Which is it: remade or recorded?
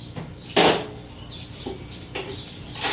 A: recorded